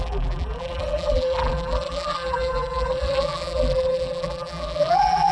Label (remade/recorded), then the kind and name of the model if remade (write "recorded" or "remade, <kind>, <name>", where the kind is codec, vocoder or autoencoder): remade, vocoder, BigVGAN v2